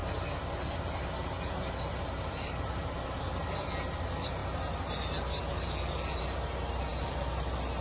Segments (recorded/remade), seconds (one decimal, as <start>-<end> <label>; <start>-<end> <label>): 0.0-7.8 recorded